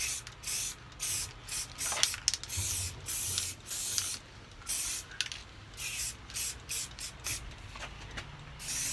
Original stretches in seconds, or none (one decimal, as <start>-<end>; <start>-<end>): 0.0-5.4; 6.2-8.9

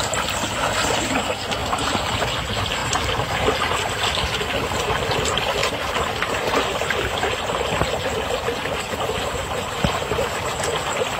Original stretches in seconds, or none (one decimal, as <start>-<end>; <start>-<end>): 0.0-5.6; 7.8-11.2

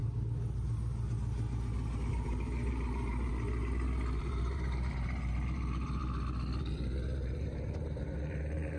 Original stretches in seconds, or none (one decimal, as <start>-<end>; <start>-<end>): 0.0-2.1; 3.3-4.2; 6.0-6.6

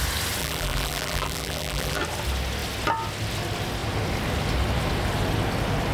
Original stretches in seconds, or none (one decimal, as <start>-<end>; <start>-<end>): 0.0-0.4; 2.0-5.9

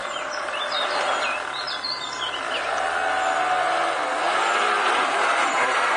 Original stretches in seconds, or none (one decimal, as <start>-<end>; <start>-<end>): 0.9-6.0

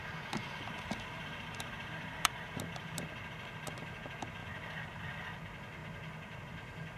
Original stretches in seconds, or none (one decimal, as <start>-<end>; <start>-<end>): 0.0-0.4; 3.0-4.4; 5.2-7.0

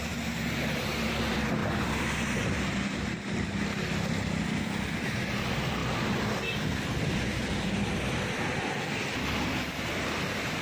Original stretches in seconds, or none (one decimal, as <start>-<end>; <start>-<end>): 1.6-5.0; 5.8-9.9

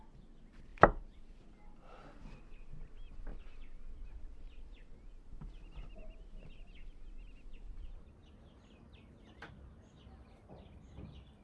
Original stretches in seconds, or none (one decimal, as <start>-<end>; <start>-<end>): 0.0-11.4